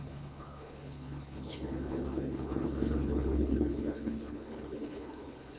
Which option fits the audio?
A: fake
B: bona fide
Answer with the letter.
A